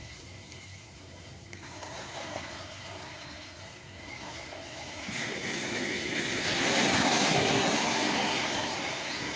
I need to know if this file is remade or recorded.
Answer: remade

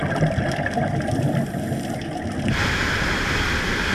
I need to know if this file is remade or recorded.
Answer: recorded